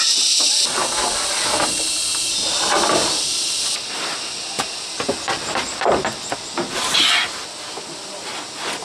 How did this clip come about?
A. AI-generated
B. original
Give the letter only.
B